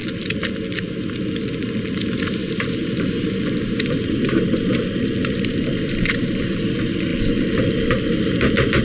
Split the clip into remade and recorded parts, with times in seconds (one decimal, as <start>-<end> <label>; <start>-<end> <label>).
0.0-0.5 remade; 0.5-2.4 recorded; 2.4-6.6 remade; 6.6-7.1 recorded; 7.1-8.0 remade; 8.0-8.8 recorded